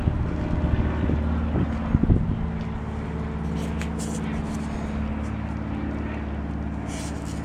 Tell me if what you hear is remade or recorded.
recorded